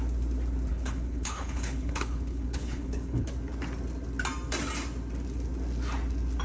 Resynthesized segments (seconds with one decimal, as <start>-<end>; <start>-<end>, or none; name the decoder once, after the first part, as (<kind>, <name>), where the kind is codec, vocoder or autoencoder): 0.7-3.3 (codec, HILCodec)